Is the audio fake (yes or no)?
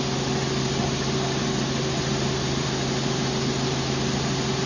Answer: no